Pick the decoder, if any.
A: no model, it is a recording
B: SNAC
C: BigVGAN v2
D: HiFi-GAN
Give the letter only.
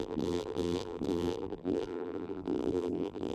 C